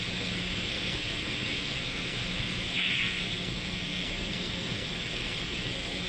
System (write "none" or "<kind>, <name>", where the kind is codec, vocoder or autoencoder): codec, SNAC